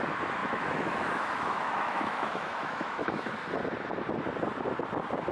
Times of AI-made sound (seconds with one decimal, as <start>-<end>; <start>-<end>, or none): 0.4-3.4